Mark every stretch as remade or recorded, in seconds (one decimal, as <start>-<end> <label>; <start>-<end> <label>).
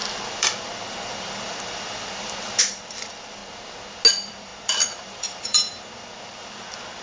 0.0-3.4 remade; 3.4-4.1 recorded; 4.1-7.0 remade